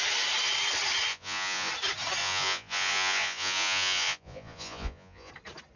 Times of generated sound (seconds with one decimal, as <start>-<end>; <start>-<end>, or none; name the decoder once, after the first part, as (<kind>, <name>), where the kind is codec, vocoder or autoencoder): 1.1-1.7 (vocoder, Vocos); 2.2-5.3